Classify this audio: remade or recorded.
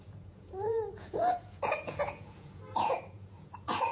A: remade